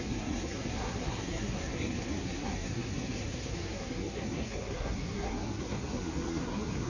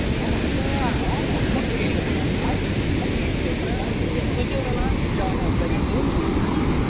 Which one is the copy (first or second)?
first